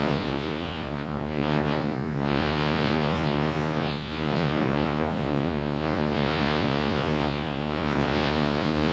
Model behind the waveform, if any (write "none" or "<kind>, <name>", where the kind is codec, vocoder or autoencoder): vocoder, Vocos